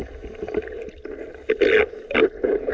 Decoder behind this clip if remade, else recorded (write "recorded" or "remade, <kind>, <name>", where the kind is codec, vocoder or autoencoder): recorded